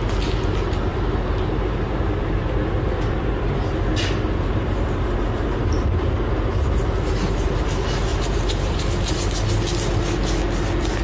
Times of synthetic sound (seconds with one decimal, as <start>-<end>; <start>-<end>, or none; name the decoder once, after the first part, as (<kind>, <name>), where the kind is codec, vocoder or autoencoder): 0.9-5.6 (vocoder, BigVGAN v2); 8.1-8.8

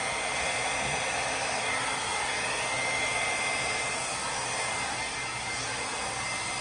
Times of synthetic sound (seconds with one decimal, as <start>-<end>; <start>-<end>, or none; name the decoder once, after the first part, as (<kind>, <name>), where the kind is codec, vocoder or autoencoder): 0.0-1.5 (vocoder, BigVGAN v2)

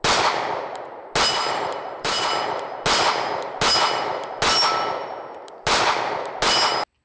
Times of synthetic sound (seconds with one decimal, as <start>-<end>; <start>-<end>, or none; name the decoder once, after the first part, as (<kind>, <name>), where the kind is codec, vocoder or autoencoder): 1.3-2.3 (vocoder, BigVGAN v2)

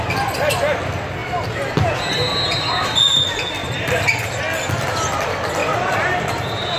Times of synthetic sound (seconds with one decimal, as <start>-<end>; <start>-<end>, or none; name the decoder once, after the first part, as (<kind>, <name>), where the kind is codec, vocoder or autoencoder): 3.6-4.4 (vocoder, BigVGAN v2); 5.6-6.8